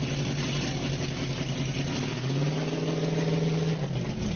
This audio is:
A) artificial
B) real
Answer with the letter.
B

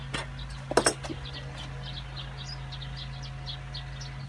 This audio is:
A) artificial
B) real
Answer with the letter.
B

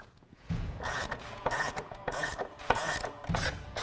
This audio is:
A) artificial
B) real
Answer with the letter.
A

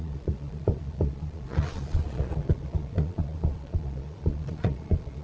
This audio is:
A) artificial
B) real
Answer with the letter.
A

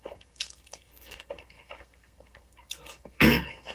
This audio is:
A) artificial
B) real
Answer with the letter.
A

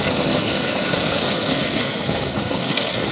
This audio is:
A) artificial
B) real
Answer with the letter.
A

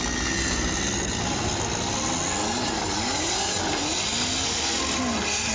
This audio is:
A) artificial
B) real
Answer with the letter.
B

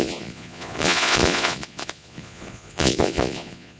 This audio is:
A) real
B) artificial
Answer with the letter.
B